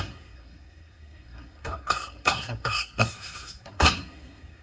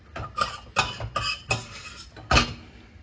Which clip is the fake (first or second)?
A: first